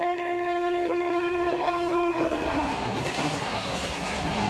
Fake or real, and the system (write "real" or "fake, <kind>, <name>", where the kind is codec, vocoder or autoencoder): fake, codec, SNAC